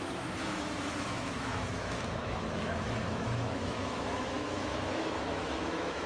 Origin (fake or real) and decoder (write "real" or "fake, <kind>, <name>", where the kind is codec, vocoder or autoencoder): fake, autoencoder, DAC-VAE